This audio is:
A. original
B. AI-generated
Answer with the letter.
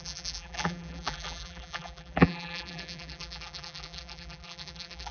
B